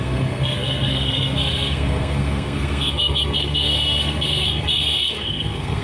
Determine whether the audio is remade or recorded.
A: remade